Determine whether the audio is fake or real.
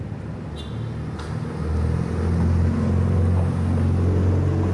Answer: real